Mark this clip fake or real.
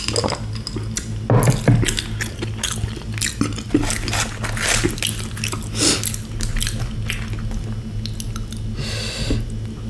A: real